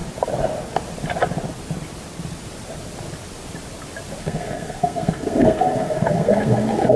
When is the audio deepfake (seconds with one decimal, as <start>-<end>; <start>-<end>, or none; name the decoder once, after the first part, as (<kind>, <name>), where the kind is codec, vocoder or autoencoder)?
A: 4.2-7.0 (codec, SNAC)